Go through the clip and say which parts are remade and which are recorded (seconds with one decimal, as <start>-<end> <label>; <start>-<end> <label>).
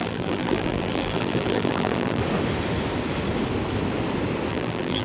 0.0-2.2 remade; 2.2-4.5 recorded; 4.5-5.0 remade